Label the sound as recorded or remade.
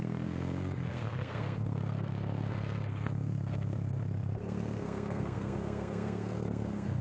remade